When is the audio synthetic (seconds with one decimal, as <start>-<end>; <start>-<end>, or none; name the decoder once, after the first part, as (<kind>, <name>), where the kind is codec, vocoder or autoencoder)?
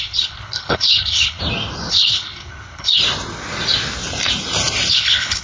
0.0-1.4 (codec, HILCodec); 1.9-3.0; 4.9-5.4